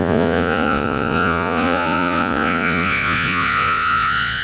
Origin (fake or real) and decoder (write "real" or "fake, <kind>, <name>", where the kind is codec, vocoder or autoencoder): fake, vocoder, Vocos